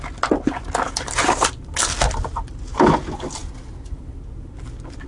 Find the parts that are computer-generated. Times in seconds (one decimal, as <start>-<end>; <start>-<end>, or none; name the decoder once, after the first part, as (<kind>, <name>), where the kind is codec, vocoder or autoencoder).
none

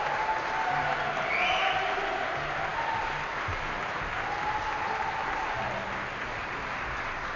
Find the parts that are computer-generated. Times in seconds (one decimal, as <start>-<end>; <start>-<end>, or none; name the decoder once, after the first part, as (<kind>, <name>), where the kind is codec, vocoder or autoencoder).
none

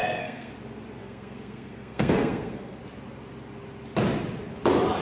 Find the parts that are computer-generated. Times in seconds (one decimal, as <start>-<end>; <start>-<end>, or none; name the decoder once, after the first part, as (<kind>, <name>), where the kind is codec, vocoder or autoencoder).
0.0-0.5 (codec, SNAC); 1.0-2.8

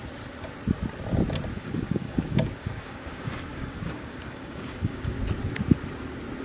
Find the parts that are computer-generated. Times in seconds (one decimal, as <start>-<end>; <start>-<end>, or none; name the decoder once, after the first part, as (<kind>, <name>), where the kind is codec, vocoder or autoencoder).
1.5-5.1 (codec, DAC)

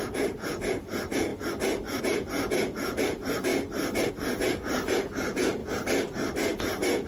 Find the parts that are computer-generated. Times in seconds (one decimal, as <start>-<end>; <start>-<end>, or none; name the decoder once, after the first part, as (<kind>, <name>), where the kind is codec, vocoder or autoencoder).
0.0-1.3 (vocoder, Vocos); 2.0-3.5; 4.1-5.6; 6.6-7.1

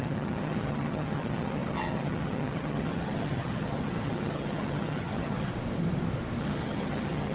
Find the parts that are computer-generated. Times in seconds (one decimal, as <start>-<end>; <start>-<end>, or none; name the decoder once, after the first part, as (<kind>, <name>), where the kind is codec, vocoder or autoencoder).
0.0-5.5 (vocoder, HiFi-GAN); 6.4-7.3

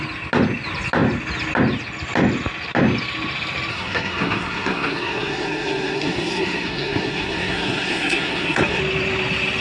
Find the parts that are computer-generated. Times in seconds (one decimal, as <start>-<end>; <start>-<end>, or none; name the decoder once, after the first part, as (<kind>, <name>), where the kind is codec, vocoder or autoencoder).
3.7-8.8 (codec, SNAC)